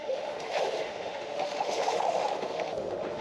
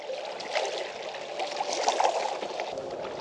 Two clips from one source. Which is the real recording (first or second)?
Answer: second